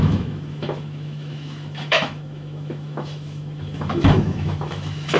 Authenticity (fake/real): fake